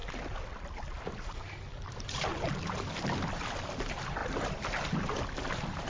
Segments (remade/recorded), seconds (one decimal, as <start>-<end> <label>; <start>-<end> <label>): 0.0-5.9 recorded